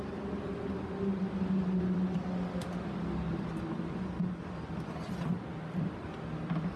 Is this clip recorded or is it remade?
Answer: recorded